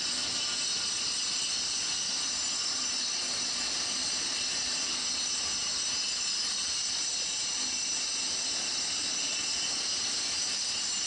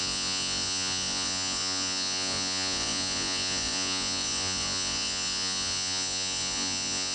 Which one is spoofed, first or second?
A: second